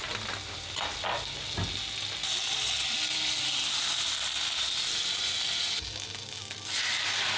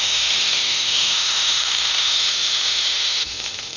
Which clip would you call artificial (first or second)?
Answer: second